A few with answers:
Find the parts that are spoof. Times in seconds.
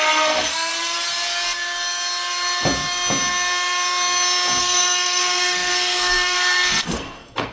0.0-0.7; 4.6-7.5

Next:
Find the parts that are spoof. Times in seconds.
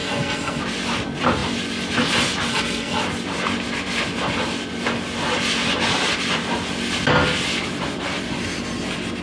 0.0-0.6; 2.5-3.0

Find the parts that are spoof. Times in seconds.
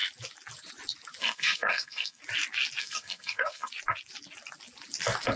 1.2-2.2; 2.8-3.7